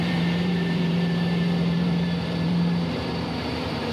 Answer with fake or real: fake